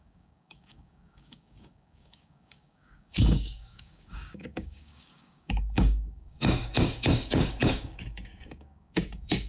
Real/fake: fake